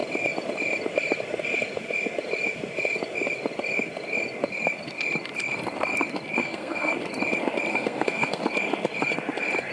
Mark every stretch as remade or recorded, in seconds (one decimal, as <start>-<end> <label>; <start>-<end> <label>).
0.0-6.4 recorded; 6.4-6.9 remade; 6.9-7.7 recorded; 7.7-8.4 remade; 8.4-9.7 recorded